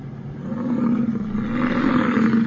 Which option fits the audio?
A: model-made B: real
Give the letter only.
B